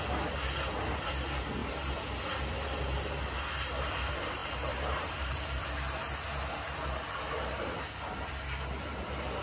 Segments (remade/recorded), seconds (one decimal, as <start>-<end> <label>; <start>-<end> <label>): 0.0-4.4 recorded; 4.4-5.4 remade; 5.4-9.4 recorded